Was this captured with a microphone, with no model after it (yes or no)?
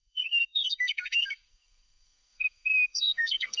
no